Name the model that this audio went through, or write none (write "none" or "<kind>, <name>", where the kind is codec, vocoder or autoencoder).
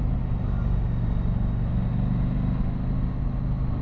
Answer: none